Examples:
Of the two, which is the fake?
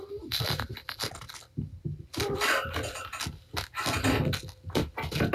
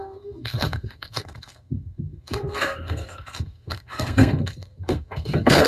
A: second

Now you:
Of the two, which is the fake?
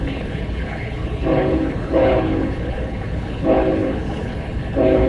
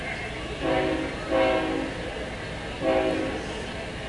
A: first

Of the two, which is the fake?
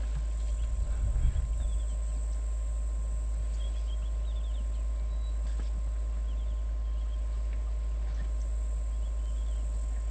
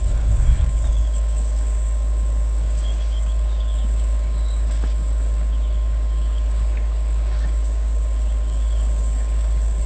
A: second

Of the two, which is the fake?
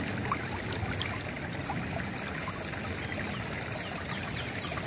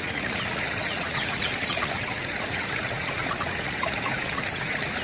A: second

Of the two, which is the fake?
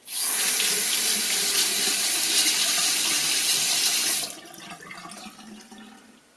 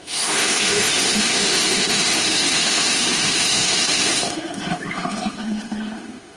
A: second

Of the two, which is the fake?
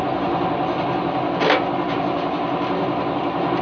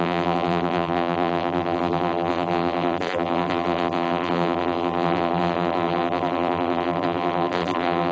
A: second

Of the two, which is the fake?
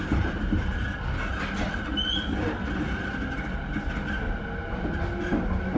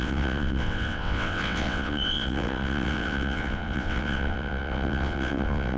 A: second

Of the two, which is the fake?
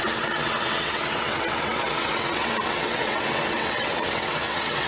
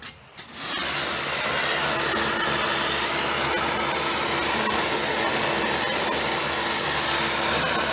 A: first